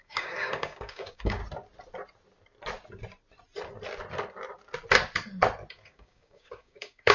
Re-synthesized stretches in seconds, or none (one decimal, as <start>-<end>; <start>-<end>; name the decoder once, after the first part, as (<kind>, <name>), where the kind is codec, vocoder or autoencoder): 0.0-1.4 (codec, DAC); 5.7-7.1